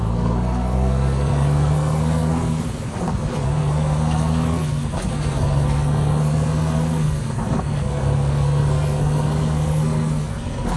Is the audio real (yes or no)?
no